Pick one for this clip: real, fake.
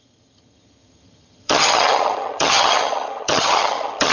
fake